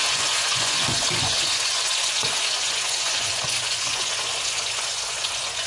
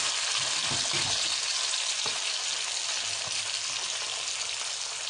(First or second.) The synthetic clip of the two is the first